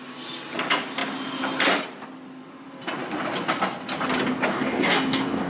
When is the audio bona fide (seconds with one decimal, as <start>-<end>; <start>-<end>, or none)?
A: 0.0-4.5